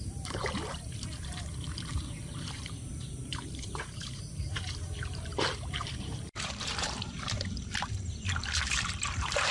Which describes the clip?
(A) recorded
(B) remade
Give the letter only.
B